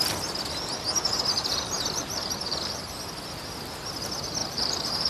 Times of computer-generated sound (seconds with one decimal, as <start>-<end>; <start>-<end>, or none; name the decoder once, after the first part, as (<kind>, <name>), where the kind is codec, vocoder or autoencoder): 0.7-3.1 (vocoder, BigVGAN v2); 4.4-5.1